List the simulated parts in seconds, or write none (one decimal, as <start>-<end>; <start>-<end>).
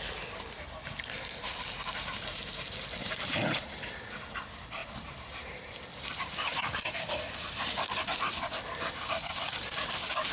3.0-3.9; 4.8-5.7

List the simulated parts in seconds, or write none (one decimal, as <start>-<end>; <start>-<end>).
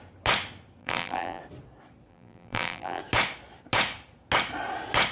0.8-1.4; 2.1-3.0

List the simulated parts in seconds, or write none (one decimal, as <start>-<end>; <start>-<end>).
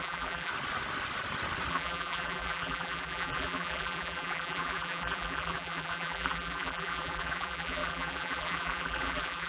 0.0-0.5; 1.7-9.5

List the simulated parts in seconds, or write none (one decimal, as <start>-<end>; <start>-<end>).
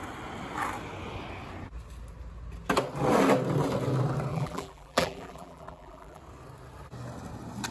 4.3-6.2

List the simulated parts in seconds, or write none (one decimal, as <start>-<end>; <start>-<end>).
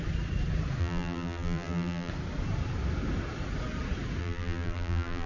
0.8-2.1; 4.2-5.3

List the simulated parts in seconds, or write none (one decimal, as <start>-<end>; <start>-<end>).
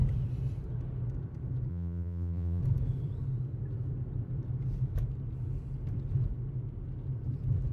1.7-2.6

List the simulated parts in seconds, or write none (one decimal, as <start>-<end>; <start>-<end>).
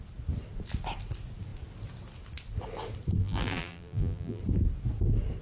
3.2-4.4